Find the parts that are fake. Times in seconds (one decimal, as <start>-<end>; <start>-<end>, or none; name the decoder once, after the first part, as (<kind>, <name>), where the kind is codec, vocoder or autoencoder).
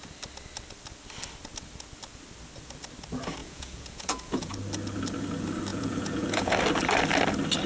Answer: 3.4-4.5 (vocoder, Vocos); 5.7-6.5